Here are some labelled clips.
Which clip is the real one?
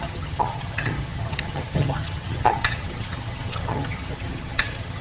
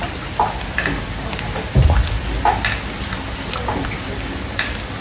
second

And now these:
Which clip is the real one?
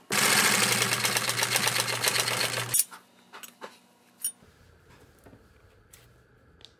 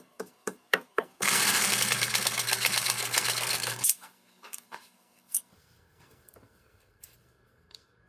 first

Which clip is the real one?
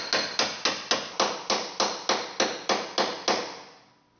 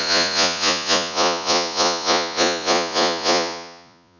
first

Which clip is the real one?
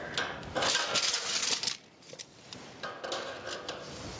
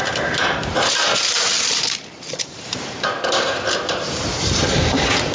first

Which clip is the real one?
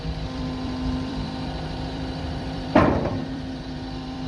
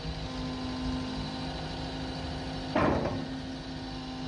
second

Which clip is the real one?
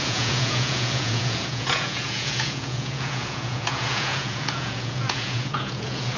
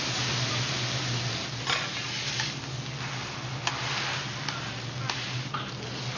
second